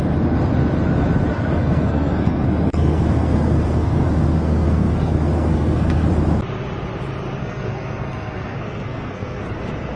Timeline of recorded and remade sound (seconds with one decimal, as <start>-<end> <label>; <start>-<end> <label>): 0.0-1.3 recorded; 1.3-6.1 remade; 6.1-7.4 recorded; 7.4-9.6 remade; 9.6-10.0 recorded